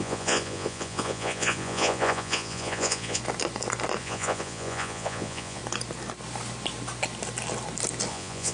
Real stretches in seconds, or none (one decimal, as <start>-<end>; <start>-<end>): 3.2-4.0; 5.6-8.1